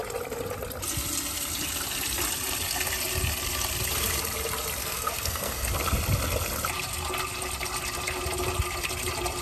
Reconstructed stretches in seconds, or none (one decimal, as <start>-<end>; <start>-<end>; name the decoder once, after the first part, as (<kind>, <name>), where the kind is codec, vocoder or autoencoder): 4.8-5.7 (codec, SNAC)